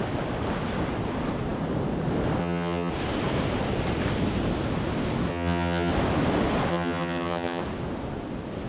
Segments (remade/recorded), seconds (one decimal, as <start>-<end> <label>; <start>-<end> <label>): 0.0-2.4 recorded; 2.4-2.9 remade; 2.9-5.3 recorded; 5.3-5.9 remade; 5.9-6.7 recorded; 6.7-7.6 remade; 7.6-8.7 recorded